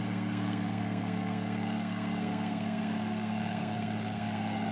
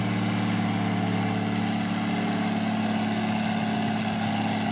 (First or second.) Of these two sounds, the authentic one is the second